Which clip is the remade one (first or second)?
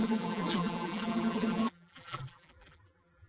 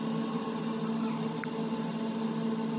first